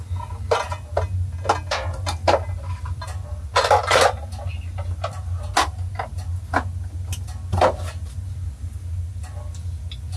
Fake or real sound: real